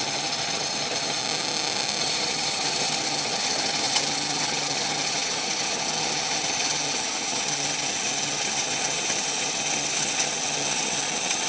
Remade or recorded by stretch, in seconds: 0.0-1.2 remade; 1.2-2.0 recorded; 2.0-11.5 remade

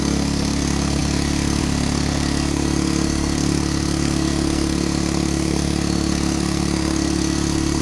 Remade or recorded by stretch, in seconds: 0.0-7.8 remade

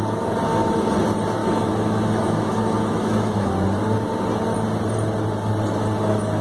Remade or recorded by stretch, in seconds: 0.0-1.4 recorded; 1.4-3.5 remade; 3.5-6.4 recorded

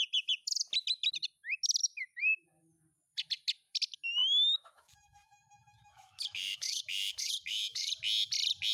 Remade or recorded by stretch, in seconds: 0.0-1.8 recorded; 1.8-2.7 remade; 2.7-4.2 recorded; 4.2-7.9 remade; 7.9-8.7 recorded

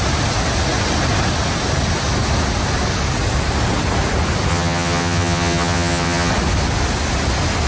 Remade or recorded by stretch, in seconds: 0.0-4.5 recorded; 4.5-6.3 remade; 6.3-7.7 recorded

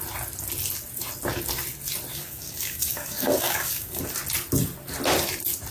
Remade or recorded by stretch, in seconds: 0.0-2.1 recorded; 2.1-4.0 remade; 4.0-5.7 recorded

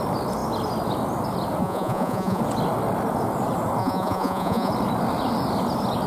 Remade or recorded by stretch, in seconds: 0.0-1.6 recorded; 1.6-2.4 remade; 2.4-3.8 recorded; 3.8-4.7 remade; 4.7-6.1 recorded